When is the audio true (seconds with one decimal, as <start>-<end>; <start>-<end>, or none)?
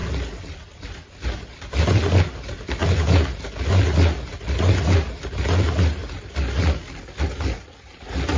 0.0-8.4